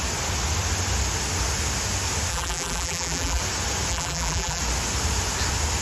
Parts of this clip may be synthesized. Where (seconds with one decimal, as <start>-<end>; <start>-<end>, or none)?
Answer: 2.3-3.4; 3.9-4.6